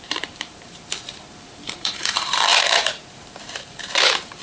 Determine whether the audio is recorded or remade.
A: remade